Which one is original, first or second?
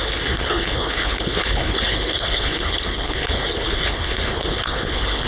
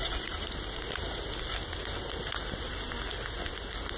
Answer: second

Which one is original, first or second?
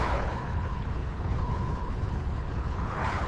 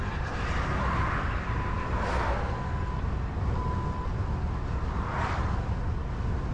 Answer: second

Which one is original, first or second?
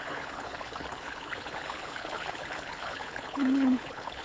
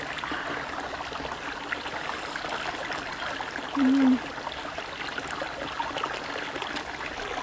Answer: second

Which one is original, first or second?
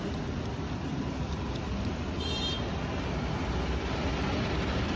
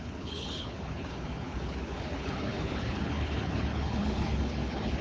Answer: first